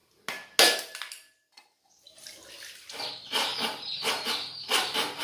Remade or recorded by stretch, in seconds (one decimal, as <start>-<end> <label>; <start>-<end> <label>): 0.0-3.1 recorded; 3.1-5.2 remade